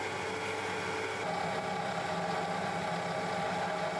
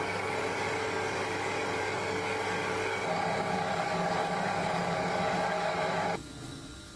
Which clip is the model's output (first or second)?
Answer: second